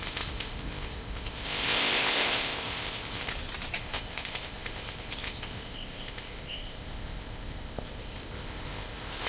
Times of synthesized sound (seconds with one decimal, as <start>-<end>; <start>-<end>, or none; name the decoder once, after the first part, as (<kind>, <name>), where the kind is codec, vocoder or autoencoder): 0.0-3.3 (codec, ZipCodec); 3.8-9.3

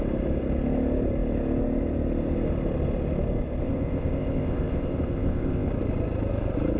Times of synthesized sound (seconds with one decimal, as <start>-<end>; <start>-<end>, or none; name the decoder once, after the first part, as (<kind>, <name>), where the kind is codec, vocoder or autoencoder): 3.6-5.7 (codec, ZipCodec)

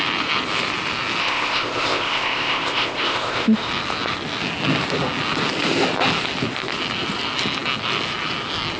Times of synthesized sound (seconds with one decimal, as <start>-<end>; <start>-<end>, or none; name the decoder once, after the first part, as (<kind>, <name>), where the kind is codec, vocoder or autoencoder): 1.2-3.7 (codec, ZipCodec)

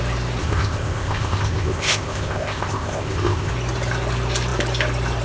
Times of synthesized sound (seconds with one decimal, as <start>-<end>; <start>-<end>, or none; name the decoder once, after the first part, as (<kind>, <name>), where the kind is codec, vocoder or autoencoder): 0.4-3.5 (codec, ZipCodec)

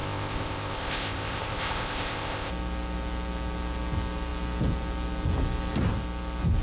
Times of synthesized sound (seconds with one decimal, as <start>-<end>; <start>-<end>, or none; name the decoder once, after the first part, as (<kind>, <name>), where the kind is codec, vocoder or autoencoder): 0.0-2.5 (codec, ZipCodec)

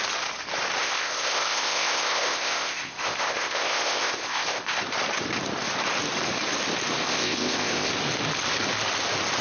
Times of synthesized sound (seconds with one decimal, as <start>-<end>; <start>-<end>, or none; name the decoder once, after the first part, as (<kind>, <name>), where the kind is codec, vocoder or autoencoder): 0.8-4.8 (codec, ZipCodec); 7.0-7.9